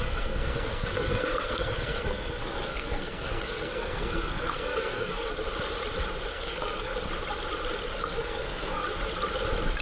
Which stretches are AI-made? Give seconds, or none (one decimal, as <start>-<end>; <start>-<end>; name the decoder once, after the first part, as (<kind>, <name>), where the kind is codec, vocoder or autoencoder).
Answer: 0.0-5.3 (codec, SNAC); 6.3-6.9; 8.0-8.8